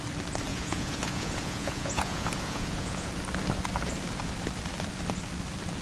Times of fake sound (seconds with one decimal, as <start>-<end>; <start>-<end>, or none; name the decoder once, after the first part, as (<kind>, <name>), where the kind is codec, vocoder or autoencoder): 0.5-3.1 (vocoder, Vocos)